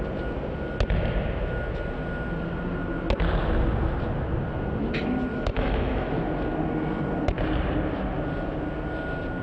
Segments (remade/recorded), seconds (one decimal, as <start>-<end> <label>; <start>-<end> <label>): 0.0-5.3 recorded; 5.3-6.1 remade; 6.1-9.4 recorded